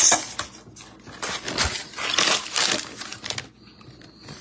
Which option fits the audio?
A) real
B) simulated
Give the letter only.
A